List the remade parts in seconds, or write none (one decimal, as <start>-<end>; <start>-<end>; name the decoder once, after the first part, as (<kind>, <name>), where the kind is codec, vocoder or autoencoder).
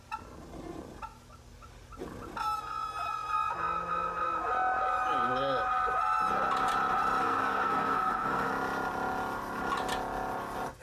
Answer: 7.2-8.5 (codec, SNAC)